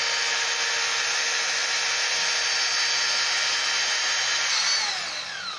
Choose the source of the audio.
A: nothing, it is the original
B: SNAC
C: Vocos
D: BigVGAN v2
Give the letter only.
A